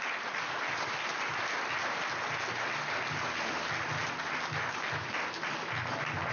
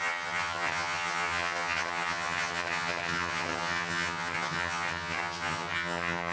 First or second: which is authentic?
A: first